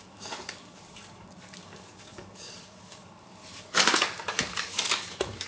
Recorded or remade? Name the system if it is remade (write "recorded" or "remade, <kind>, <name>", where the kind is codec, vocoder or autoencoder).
remade, codec, DAC